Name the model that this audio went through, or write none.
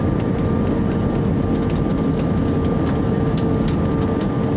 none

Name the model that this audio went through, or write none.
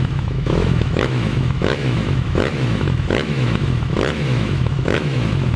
autoencoder, DAC-VAE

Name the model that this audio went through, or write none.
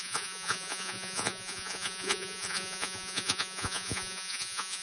vocoder, Vocos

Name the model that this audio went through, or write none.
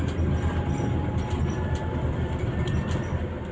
none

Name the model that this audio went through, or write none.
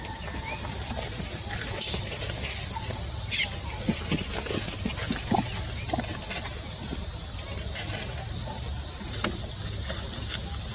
none